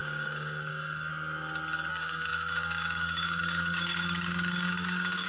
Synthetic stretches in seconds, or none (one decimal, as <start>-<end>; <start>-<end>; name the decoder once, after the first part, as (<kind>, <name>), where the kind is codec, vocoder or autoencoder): 0.0-1.1 (codec, DAC); 1.9-5.3